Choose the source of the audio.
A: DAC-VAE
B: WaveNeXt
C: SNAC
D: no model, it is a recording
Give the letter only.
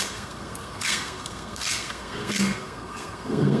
C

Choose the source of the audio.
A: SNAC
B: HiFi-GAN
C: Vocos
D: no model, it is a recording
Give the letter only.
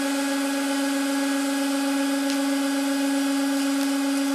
D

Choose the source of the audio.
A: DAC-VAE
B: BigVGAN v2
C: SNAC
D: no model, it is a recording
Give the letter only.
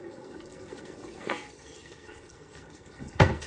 C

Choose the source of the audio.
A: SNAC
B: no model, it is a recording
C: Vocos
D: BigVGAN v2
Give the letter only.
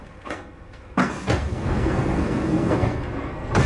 A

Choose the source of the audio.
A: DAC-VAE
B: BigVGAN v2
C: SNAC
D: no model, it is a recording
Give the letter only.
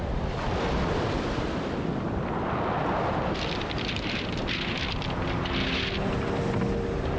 D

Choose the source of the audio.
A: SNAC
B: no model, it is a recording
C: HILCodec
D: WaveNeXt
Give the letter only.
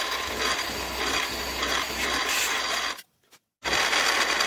B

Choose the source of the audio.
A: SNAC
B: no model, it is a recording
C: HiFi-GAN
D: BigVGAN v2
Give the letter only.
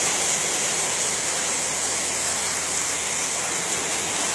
B